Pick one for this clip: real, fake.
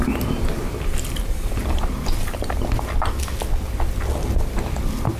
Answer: real